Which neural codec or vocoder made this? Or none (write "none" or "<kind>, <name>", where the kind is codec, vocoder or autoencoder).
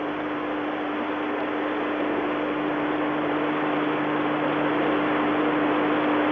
none